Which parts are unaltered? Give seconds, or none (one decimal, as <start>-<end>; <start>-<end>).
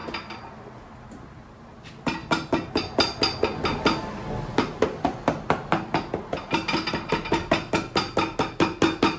0.0-9.2